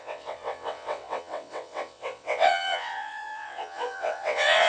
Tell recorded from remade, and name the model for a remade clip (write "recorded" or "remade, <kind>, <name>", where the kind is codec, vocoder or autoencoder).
remade, vocoder, WaveNeXt